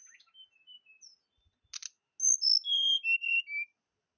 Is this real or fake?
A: real